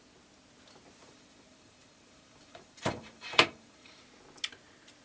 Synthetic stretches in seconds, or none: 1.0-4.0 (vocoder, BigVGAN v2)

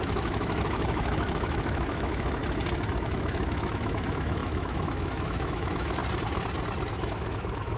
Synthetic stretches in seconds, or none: 0.0-2.4 (autoencoder, DAC-VAE); 3.0-6.0; 6.9-7.8